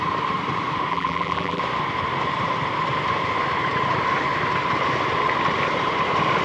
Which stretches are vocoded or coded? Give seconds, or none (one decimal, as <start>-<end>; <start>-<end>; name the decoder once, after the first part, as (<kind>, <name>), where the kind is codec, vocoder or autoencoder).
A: 0.9-1.6 (vocoder, BigVGAN v2)